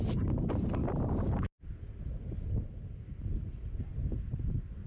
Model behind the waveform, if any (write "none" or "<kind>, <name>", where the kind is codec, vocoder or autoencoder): none